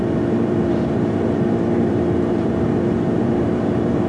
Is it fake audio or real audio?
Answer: fake